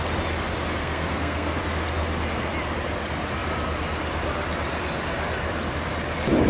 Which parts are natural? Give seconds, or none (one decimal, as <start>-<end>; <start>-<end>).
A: 0.0-0.8; 1.6-6.5